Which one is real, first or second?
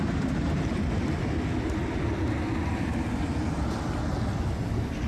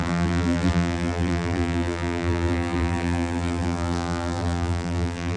first